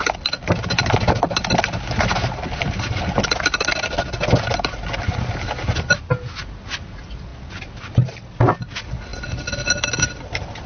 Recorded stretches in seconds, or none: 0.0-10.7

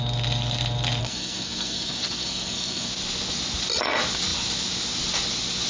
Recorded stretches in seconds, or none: 0.0-1.0; 2.9-5.7

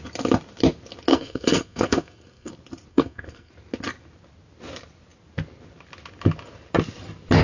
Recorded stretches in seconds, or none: 0.0-1.1; 2.5-2.9; 3.5-7.4

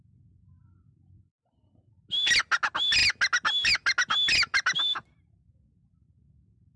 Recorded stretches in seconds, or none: 0.0-6.8